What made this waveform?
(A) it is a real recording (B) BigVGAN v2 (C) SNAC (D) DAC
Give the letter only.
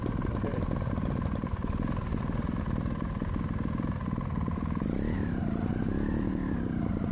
A